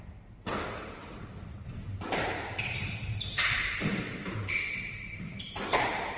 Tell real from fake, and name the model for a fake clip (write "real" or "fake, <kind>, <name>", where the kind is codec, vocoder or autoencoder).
fake, vocoder, BigVGAN v2